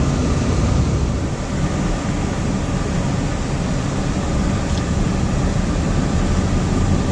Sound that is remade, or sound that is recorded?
recorded